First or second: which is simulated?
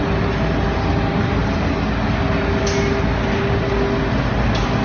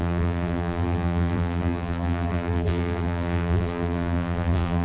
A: second